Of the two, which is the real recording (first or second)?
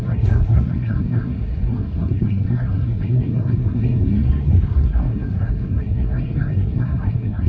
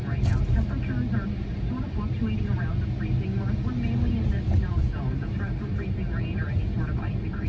second